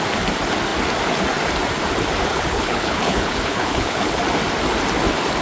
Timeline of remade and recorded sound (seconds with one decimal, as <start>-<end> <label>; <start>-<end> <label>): 0.0-2.3 recorded; 2.3-4.2 remade; 4.2-5.4 recorded